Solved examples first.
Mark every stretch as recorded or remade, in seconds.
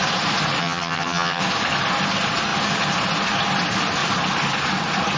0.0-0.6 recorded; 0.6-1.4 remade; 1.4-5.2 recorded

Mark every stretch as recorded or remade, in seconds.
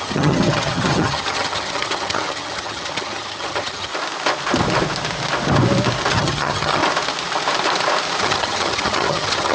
0.0-3.9 remade; 3.9-6.1 recorded; 6.1-6.8 remade; 6.8-8.2 recorded; 8.2-9.5 remade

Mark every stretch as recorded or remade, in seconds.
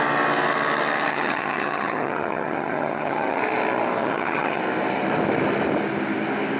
0.0-1.1 recorded; 1.1-3.4 remade; 3.4-4.0 recorded; 4.0-4.6 remade; 4.6-6.6 recorded